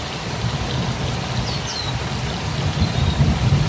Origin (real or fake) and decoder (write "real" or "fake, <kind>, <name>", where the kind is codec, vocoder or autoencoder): real